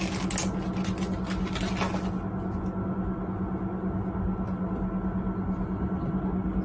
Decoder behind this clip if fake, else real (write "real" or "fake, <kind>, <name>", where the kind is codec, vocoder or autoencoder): real